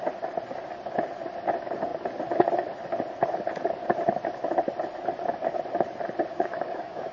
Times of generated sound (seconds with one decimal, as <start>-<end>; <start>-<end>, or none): 6.3-7.1